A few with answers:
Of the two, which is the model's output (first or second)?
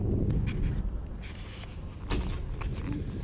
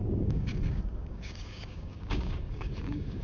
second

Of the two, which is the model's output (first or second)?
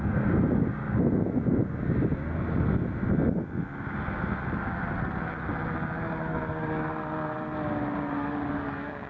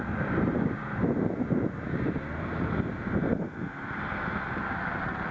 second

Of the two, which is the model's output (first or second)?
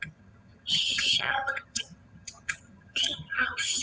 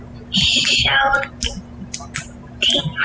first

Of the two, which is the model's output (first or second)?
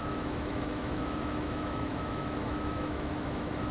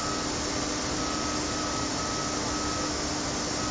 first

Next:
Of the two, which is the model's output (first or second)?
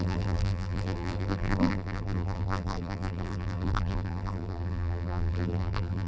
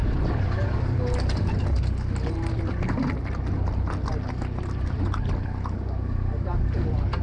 first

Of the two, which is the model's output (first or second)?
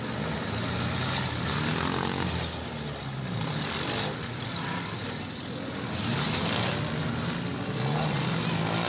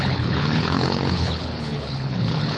second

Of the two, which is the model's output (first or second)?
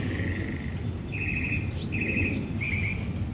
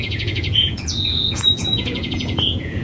second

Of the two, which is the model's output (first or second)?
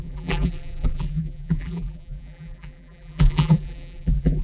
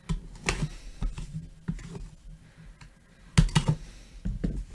first